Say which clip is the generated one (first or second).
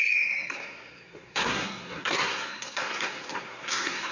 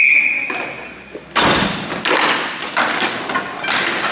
first